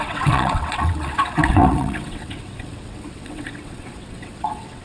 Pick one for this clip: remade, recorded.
remade